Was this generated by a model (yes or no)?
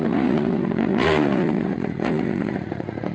yes